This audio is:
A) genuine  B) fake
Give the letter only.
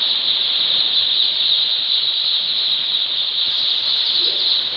A